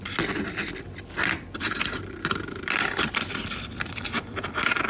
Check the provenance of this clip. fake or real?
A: fake